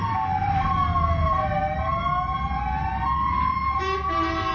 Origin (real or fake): real